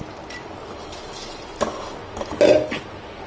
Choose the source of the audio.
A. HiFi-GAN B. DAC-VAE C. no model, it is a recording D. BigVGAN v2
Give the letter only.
C